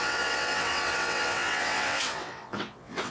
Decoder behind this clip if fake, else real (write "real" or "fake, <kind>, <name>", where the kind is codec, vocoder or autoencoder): fake, vocoder, WaveNeXt